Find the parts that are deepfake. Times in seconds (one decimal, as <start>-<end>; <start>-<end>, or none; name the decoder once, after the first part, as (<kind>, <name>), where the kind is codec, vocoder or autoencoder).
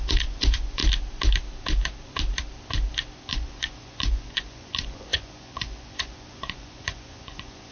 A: 0.0-0.8 (vocoder, Vocos); 3.3-7.7